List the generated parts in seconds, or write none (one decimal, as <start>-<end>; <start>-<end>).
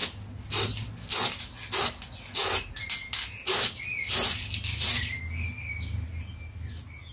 none